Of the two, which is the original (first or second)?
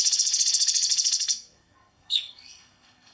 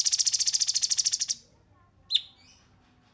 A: second